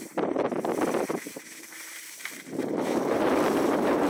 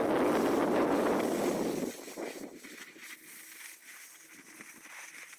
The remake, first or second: first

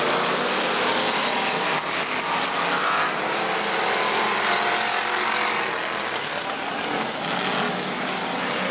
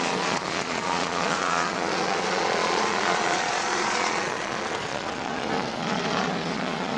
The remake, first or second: second